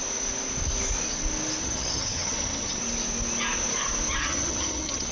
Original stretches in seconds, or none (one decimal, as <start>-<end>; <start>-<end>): 0.0-1.6; 2.8-4.2